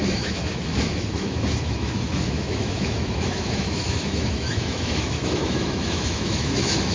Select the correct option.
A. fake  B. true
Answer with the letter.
A